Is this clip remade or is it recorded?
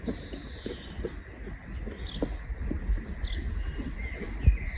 recorded